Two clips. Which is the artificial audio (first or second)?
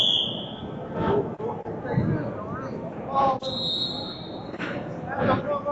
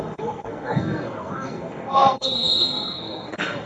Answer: second